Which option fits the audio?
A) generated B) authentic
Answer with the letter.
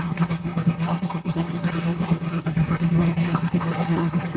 A